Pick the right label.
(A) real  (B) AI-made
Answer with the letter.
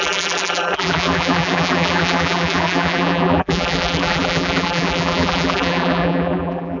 B